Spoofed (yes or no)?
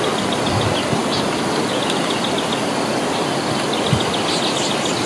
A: no